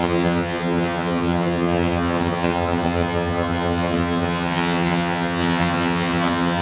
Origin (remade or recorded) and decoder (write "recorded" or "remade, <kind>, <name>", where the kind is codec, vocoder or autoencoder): remade, vocoder, HiFi-GAN